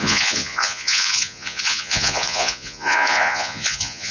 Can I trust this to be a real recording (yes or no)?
no